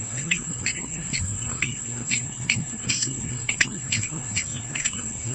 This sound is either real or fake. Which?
fake